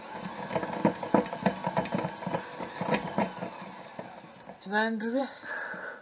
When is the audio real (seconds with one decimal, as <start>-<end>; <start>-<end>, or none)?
0.0-6.0